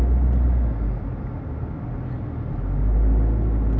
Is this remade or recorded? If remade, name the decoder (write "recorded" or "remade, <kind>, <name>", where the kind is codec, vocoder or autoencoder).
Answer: recorded